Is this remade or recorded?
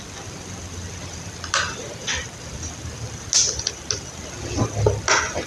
recorded